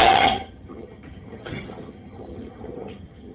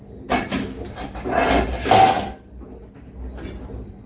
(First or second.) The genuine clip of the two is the second